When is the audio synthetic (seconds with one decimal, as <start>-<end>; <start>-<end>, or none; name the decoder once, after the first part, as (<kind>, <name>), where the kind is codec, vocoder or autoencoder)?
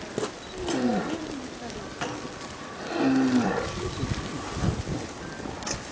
0.0-5.9 (vocoder, BigVGAN v2)